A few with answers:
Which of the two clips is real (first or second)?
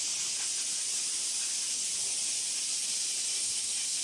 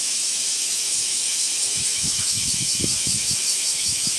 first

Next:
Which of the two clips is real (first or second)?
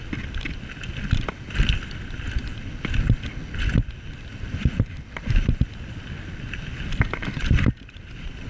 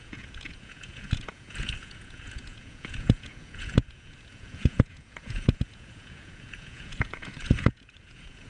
first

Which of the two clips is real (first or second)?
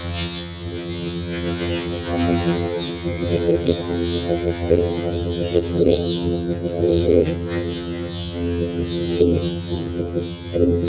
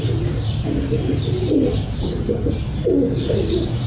second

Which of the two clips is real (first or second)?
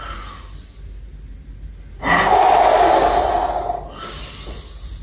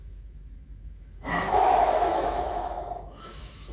first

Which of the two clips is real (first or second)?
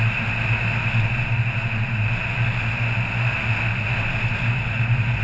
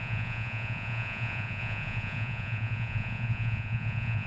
first